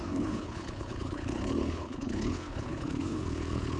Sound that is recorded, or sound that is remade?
remade